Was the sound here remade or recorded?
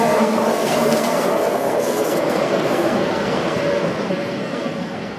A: remade